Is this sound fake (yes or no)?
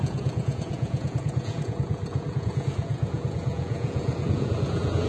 yes